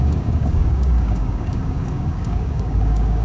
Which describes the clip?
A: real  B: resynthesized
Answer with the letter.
B